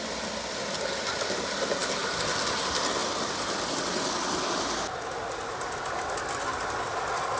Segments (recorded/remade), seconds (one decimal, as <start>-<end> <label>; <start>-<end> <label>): 0.0-7.4 recorded